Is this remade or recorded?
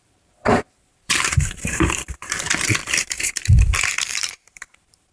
remade